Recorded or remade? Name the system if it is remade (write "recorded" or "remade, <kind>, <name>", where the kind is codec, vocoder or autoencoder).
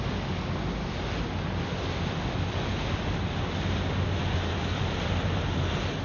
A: recorded